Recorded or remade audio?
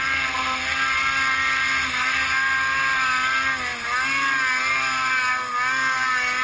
recorded